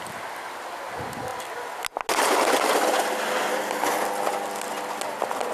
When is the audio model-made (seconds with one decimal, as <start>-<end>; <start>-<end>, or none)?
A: none